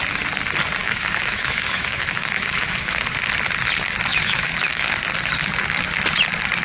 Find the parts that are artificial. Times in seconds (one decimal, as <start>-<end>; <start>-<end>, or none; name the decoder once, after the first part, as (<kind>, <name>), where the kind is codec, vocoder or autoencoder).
0.8-2.9 (autoencoder, DAC-VAE); 4.1-4.9